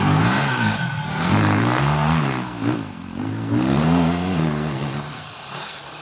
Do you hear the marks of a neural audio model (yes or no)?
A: yes